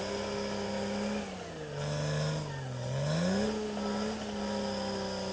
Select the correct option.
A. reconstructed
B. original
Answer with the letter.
B